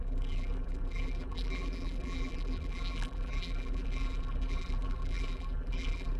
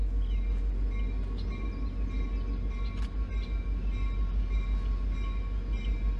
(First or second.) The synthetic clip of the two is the first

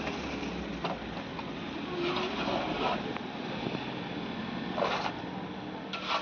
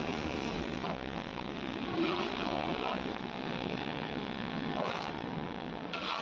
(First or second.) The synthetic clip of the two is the second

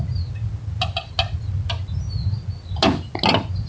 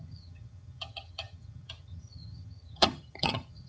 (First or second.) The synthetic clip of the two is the second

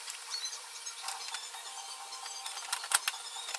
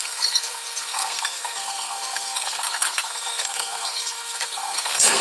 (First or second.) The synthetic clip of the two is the second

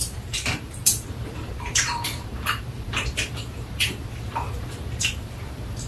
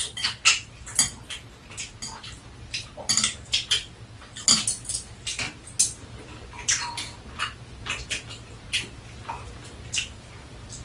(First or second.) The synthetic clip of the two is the first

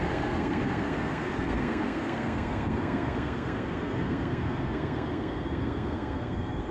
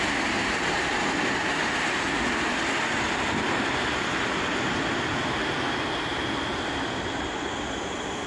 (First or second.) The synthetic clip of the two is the first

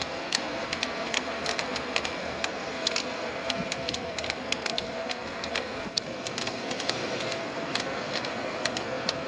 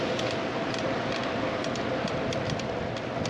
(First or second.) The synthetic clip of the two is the first